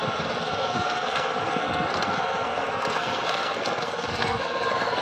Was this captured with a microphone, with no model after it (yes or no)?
no